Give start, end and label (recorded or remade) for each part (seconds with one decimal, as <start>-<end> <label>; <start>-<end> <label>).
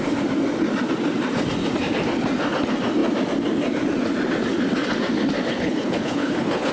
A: 0.0-5.5 recorded; 5.5-6.7 remade